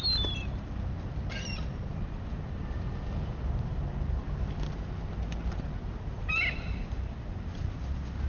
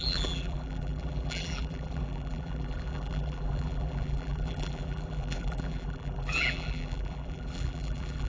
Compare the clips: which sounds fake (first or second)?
second